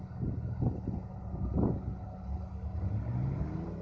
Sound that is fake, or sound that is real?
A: real